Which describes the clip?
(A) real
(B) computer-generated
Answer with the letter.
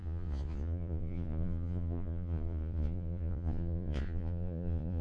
B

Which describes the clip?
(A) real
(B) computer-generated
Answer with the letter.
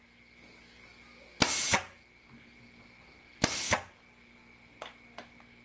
A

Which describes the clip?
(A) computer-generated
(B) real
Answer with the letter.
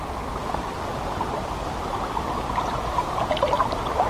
B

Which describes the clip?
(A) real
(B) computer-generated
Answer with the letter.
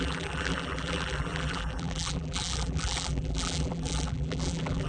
B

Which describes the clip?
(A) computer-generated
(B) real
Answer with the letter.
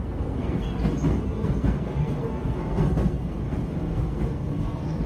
A